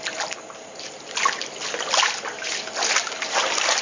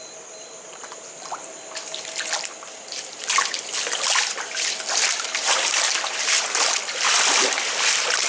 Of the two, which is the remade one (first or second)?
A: second